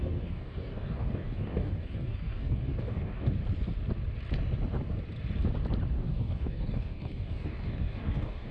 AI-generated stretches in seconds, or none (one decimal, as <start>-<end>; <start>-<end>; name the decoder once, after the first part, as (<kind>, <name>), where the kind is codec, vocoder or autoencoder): 0.0-3.4 (codec, DAC); 5.9-8.5